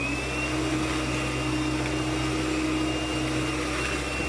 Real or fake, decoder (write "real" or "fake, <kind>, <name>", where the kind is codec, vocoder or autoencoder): real